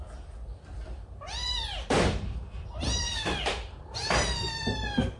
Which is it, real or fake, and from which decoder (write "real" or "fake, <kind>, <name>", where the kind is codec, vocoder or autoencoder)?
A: fake, vocoder, BigVGAN v2